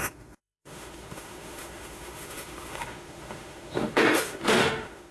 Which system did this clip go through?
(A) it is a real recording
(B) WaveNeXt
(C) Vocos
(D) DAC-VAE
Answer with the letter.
D